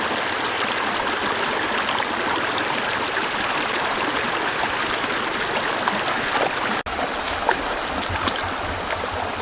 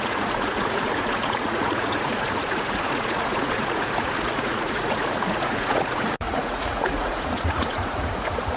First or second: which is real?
first